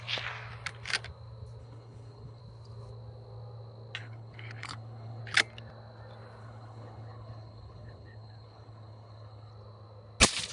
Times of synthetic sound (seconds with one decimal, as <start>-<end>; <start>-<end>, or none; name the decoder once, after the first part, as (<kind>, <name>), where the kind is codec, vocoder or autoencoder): 1.6-2.4 (codec, HILCodec); 4.0-5.2; 6.4-9.5